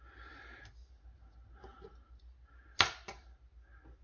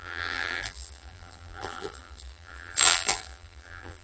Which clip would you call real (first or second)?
first